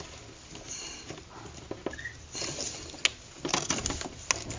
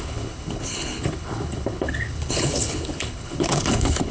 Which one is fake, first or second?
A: second